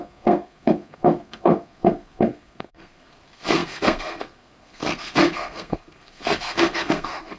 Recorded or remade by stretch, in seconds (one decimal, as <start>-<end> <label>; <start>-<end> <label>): 0.0-7.4 remade